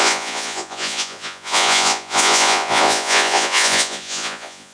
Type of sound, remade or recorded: remade